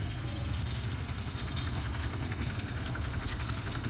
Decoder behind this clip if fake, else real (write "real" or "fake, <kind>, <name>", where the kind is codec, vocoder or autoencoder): fake, codec, SNAC